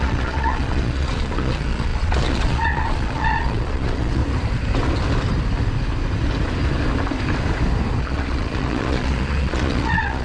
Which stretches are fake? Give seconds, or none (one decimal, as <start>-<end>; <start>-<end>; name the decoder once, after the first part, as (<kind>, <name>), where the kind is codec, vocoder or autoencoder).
0.0-4.2 (vocoder, Vocos); 8.0-10.2